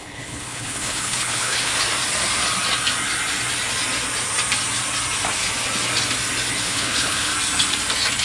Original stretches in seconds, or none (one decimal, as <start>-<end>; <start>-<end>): 1.7-6.6; 7.3-8.2